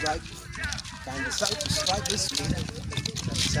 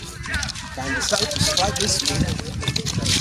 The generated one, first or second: second